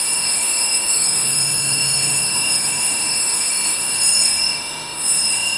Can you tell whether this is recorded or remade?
remade